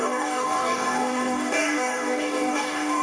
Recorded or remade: remade